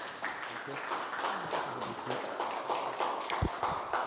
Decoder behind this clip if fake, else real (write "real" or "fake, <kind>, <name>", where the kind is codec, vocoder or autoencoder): real